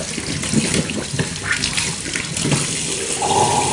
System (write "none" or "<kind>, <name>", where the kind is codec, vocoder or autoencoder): none